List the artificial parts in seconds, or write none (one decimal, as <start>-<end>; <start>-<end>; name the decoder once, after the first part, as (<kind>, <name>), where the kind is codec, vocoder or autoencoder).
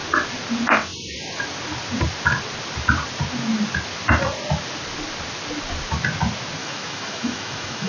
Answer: 6.6-7.9 (autoencoder, DAC-VAE)